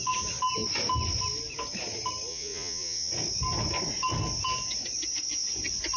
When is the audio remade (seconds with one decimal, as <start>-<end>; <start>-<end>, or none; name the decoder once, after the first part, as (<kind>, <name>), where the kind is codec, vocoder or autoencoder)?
2.3-3.1 (vocoder, Vocos)